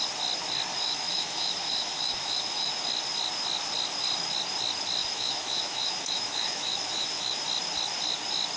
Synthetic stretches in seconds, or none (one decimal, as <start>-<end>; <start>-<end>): 0.7-2.7; 5.0-7.4